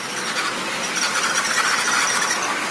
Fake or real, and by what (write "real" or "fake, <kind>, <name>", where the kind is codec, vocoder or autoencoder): real